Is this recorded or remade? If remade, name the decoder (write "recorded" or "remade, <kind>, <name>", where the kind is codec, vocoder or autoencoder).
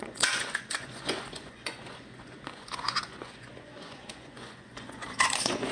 remade, vocoder, Vocos